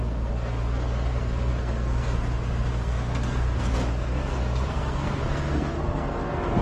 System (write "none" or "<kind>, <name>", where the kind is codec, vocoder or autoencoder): codec, SNAC